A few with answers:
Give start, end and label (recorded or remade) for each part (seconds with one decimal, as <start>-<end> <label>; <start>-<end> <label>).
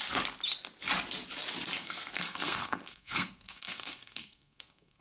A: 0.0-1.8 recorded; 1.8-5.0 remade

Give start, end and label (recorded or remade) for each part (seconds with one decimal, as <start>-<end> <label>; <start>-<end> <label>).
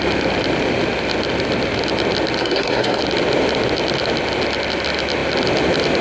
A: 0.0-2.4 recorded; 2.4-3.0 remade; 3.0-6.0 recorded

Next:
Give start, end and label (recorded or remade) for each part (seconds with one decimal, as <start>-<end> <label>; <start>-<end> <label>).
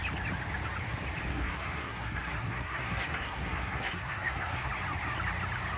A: 0.0-1.3 recorded; 1.3-4.7 remade; 4.7-5.8 recorded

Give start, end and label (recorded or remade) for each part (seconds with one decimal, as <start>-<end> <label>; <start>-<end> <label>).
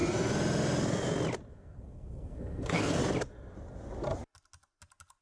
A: 0.0-1.5 recorded; 1.5-3.0 remade; 3.0-5.2 recorded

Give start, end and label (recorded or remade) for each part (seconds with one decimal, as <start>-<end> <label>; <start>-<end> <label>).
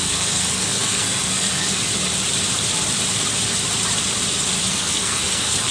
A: 0.0-1.9 remade; 1.9-4.7 recorded; 4.7-5.7 remade